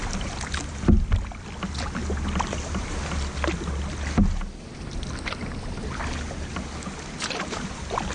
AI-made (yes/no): no